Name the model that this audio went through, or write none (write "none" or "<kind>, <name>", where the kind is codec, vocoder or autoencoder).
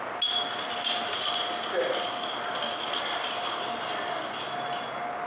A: none